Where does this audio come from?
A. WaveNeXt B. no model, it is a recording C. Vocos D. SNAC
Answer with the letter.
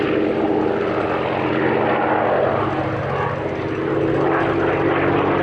B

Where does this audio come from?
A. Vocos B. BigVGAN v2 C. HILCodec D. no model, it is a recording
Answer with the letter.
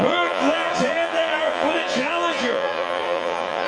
A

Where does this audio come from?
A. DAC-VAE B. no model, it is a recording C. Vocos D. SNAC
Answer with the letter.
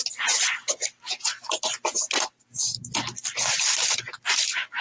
B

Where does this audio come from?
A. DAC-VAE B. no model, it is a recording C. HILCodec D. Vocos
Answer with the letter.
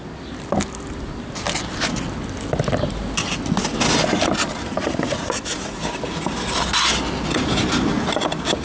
B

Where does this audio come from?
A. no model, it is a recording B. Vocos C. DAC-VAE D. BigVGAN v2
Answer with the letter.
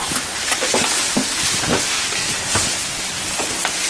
A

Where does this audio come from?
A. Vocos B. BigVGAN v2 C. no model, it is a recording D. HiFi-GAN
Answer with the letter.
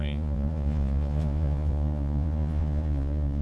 A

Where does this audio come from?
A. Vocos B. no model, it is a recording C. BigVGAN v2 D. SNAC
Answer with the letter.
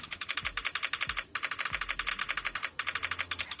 B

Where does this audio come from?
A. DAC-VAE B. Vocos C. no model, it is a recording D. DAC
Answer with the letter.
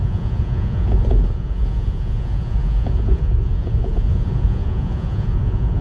B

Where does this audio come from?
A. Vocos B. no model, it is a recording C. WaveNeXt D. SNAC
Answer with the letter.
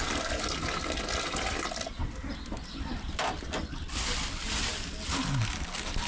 B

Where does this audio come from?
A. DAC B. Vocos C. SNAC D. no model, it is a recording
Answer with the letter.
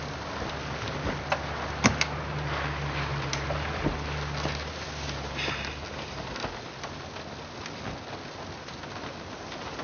D